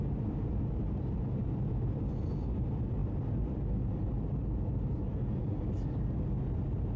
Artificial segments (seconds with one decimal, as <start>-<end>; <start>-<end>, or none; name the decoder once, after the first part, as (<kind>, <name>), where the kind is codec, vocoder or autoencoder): none